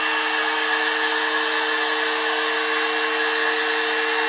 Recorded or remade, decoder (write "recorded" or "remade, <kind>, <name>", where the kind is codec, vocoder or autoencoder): recorded